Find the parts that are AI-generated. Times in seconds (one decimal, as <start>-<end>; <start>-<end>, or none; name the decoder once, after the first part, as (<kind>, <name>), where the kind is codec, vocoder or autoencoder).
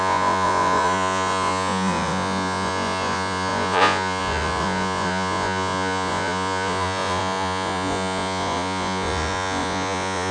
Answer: 0.0-10.3 (vocoder, Vocos)